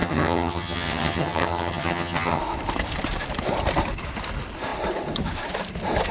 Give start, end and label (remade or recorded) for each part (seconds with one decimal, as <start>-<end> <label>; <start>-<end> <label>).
0.0-2.4 remade; 2.4-6.1 recorded